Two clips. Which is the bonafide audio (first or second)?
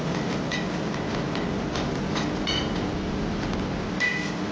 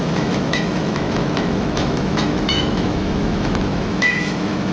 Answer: first